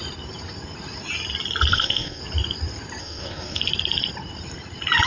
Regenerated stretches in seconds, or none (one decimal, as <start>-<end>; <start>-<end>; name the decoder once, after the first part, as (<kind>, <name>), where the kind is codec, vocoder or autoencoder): 1.7-2.2 (codec, SNAC); 3.0-3.6